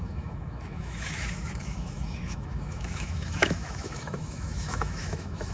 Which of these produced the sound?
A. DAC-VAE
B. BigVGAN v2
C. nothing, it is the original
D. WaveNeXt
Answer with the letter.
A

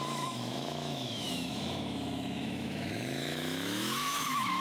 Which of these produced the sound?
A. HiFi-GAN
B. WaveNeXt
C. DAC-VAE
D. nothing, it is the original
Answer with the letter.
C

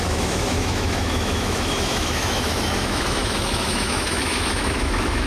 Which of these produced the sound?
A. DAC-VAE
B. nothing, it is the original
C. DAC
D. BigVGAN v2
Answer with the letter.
A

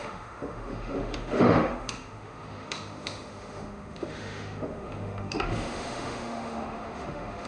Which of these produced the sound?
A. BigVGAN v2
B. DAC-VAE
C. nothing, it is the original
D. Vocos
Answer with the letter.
B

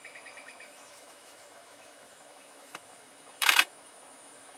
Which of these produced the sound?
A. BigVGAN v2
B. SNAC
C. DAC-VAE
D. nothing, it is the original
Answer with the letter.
C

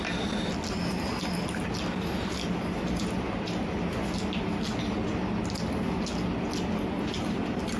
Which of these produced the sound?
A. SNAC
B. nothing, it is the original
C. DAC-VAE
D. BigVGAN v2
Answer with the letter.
B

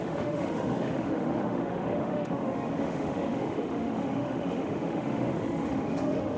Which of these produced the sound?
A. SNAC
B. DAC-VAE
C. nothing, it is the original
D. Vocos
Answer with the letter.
B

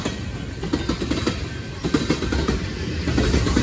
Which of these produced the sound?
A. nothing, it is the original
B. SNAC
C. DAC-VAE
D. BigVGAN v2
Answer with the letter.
A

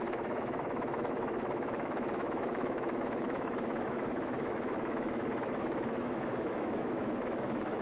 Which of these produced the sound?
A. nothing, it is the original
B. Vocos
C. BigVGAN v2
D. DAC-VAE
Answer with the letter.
D